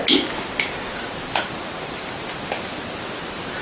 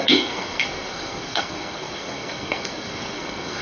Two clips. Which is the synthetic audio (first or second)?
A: second